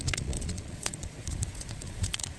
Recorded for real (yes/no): no